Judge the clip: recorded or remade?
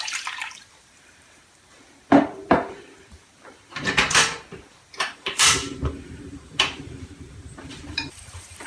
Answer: remade